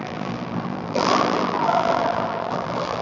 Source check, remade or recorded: remade